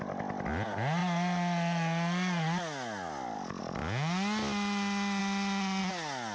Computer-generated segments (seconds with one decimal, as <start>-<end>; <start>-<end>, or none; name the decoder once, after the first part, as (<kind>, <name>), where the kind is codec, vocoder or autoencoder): none